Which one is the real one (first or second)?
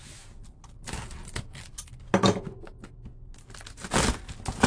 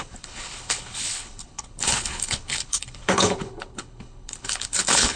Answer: first